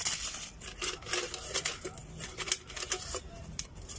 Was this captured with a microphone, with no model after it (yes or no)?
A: yes